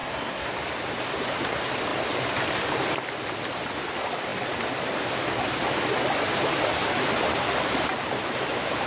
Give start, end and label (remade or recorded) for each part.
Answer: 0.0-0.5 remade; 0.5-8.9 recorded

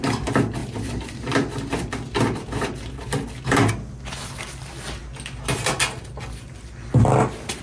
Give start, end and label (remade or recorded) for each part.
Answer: 0.0-7.6 recorded

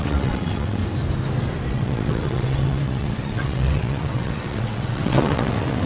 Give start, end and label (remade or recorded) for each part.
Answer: 0.0-0.8 remade; 0.8-1.7 recorded; 1.7-5.9 remade

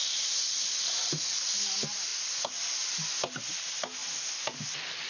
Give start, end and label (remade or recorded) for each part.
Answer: 0.0-1.1 remade; 1.1-4.0 recorded; 4.0-5.1 remade